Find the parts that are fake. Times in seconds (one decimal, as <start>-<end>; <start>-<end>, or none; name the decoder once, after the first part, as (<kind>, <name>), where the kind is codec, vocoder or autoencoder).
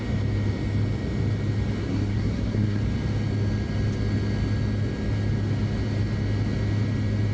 1.8-2.8 (codec, SNAC)